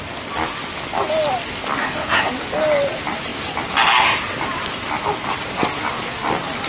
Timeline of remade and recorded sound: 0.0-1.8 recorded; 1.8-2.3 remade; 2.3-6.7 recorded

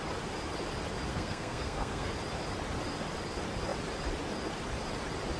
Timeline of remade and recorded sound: 0.0-1.1 recorded; 1.1-2.1 remade; 2.1-5.4 recorded

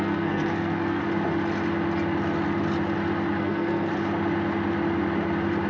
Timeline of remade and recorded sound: 0.0-1.0 remade; 1.0-3.4 recorded; 3.4-3.9 remade; 3.9-5.7 recorded

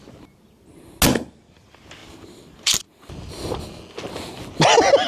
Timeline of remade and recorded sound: 0.0-2.0 recorded; 2.0-2.8 remade; 2.8-5.1 recorded